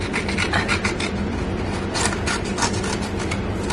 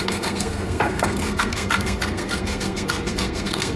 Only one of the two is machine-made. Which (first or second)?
second